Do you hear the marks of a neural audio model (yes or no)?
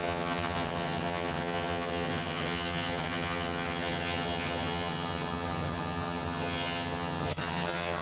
yes